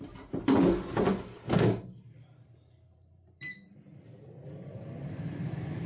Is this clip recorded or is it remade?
remade